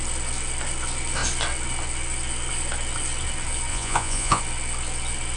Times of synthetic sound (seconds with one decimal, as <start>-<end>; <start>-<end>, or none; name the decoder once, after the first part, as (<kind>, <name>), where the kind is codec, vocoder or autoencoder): 3.7-4.4 (vocoder, Vocos)